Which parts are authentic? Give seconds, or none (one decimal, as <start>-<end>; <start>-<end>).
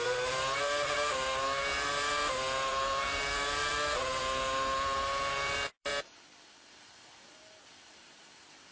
5.9-6.7